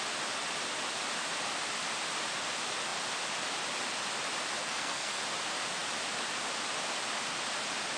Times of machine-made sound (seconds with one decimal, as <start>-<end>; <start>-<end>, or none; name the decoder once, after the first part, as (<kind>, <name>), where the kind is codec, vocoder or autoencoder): 4.6-5.2 (codec, SNAC)

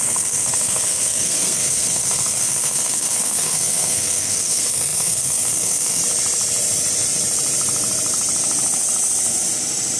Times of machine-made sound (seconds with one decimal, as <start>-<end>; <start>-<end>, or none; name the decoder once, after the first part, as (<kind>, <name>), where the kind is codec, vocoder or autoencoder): 0.0-6.0 (codec, SNAC)

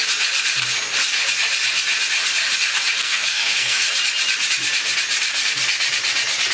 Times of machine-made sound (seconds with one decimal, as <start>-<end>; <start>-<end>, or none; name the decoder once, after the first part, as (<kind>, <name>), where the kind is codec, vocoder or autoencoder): 3.0-3.9 (codec, SNAC)

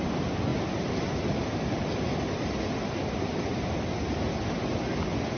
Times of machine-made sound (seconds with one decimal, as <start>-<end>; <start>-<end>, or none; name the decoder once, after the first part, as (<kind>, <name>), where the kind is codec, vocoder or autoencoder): none

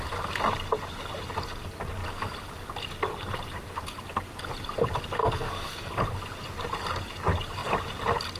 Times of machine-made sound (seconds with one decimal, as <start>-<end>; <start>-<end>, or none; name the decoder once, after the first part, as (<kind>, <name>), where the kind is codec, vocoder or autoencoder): 5.2-5.9 (codec, SNAC)

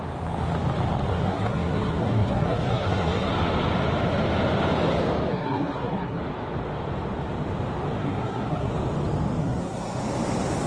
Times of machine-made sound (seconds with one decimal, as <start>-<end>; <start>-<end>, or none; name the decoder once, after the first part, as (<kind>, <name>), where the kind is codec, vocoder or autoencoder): 1.1-3.3 (codec, SNAC); 5.3-6.2; 8.0-8.7; 9.4-10.0

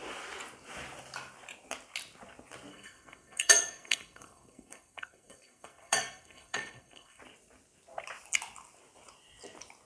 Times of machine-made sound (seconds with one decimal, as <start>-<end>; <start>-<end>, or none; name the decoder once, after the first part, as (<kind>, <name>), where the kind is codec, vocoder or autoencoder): 2.7-7.2 (codec, SNAC)